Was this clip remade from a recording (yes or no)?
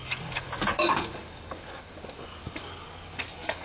yes